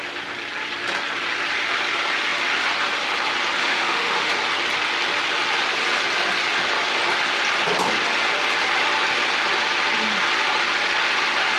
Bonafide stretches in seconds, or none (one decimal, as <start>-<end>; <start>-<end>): 0.0-3.6; 4.3-11.6